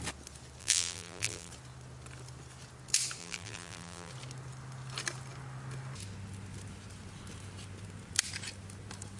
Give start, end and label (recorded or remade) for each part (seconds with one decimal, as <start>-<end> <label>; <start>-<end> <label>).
0.0-0.6 recorded; 0.6-1.5 remade; 1.5-3.2 recorded; 3.2-4.1 remade; 4.1-9.2 recorded